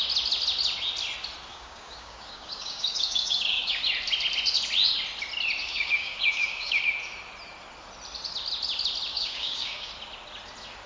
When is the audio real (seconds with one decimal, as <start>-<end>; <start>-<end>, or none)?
0.0-1.5; 3.8-5.6; 6.8-9.1; 9.9-10.9